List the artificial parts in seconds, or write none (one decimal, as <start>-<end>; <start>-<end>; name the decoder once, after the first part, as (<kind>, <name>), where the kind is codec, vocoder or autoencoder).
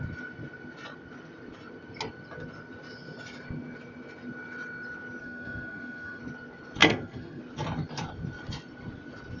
5.2-6.2 (codec, SNAC); 6.8-7.4